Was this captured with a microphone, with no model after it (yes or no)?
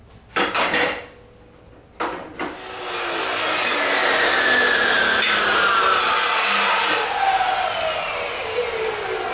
yes